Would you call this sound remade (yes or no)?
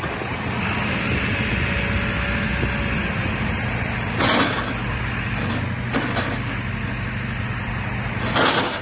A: no